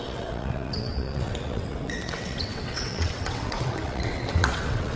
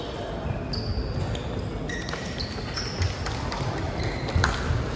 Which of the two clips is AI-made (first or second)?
first